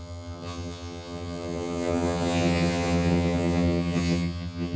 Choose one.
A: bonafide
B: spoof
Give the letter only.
B